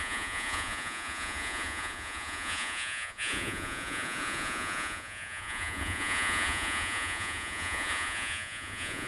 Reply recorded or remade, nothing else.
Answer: remade